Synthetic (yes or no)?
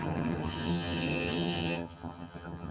yes